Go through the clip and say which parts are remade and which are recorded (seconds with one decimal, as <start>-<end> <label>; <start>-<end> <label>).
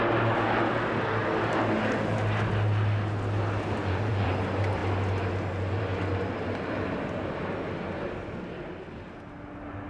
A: 0.0-3.8 recorded; 3.8-4.3 remade; 4.3-9.9 recorded